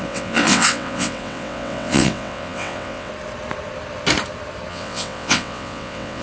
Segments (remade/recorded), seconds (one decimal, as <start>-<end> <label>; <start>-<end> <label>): 0.0-3.1 remade; 3.1-4.7 recorded; 4.7-6.2 remade

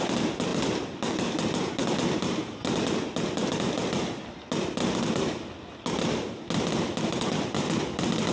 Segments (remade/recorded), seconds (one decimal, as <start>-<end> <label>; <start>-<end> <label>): 0.0-8.3 recorded